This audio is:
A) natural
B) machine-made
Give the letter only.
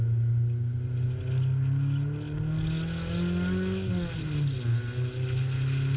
A